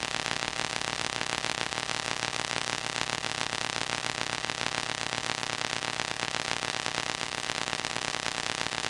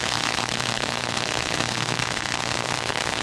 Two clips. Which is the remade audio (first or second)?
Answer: second